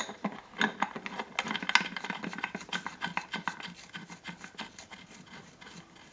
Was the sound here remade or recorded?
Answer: recorded